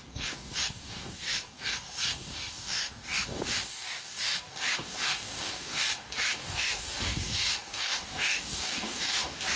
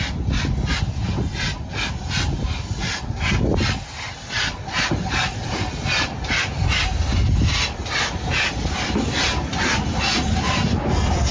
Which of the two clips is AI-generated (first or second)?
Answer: first